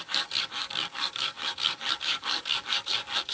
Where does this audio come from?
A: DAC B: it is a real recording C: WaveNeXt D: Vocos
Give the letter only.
A